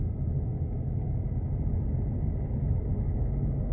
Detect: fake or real real